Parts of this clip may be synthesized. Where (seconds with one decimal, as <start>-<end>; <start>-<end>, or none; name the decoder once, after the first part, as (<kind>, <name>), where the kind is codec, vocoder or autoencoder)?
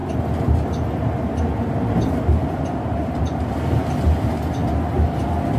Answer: none